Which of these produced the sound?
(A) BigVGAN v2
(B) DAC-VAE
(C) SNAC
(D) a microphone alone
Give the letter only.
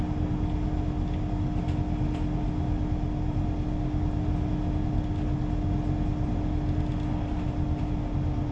D